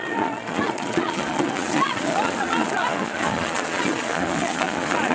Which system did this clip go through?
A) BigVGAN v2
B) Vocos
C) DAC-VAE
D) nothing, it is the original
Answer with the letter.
B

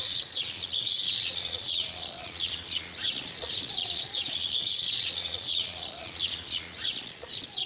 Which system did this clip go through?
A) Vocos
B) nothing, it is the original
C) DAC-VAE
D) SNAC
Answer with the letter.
A